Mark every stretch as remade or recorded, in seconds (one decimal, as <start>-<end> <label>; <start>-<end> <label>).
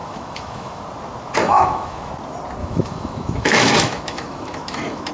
0.0-0.8 remade; 0.8-1.4 recorded; 1.4-2.1 remade; 2.1-2.6 recorded; 2.6-5.1 remade